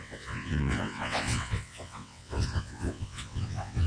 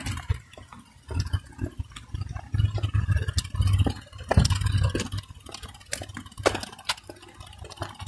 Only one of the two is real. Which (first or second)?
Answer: second